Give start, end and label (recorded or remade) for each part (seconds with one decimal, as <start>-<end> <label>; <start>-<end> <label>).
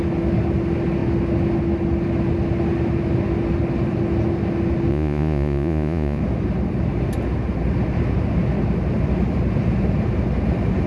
0.0-4.9 recorded; 4.9-6.2 remade; 6.2-10.9 recorded